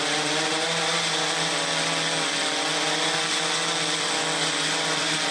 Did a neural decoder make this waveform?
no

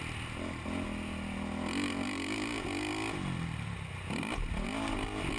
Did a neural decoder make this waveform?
no